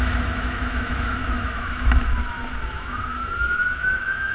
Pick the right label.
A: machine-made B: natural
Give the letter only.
A